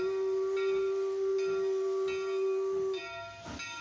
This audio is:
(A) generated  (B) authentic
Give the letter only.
B